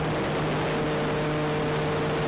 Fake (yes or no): no